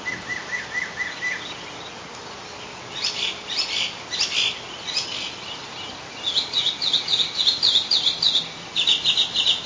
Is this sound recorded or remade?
recorded